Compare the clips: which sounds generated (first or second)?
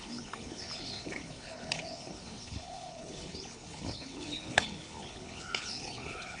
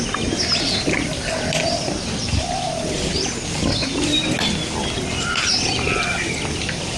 first